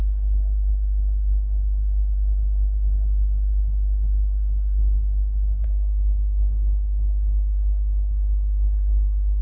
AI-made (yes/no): yes